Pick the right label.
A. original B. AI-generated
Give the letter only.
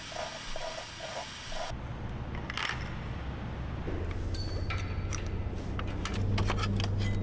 A